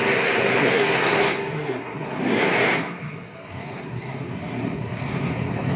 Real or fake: fake